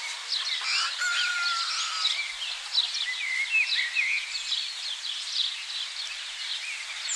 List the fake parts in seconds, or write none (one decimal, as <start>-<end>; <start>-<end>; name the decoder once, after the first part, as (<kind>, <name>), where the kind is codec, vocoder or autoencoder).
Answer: none